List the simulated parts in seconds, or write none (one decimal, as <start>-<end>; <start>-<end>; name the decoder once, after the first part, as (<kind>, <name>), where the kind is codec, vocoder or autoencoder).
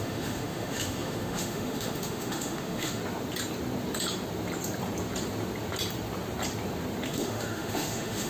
0.0-3.0 (autoencoder, DAC-VAE); 7.1-8.3